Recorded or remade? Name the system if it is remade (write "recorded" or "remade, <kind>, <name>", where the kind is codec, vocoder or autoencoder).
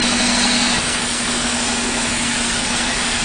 remade, codec, SNAC